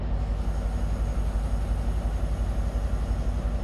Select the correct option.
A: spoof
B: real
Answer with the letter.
B